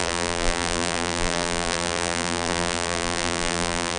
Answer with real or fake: fake